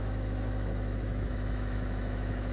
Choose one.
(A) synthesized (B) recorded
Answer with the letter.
A